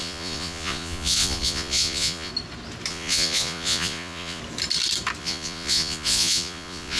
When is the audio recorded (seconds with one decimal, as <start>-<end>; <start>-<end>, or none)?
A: 2.3-2.9; 4.4-5.2